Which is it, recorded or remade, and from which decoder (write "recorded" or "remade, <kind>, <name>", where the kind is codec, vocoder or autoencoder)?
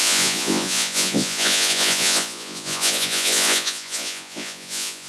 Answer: remade, vocoder, Vocos